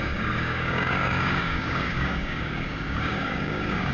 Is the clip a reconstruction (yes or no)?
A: yes